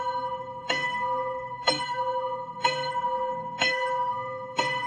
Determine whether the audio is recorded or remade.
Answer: remade